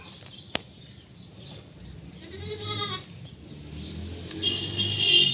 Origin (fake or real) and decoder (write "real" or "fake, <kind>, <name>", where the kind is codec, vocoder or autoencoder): real